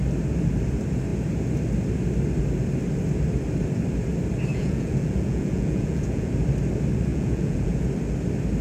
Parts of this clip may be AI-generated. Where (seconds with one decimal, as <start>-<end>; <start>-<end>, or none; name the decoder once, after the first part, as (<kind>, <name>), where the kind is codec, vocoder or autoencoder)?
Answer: 4.5-6.3 (vocoder, Vocos); 7.1-7.9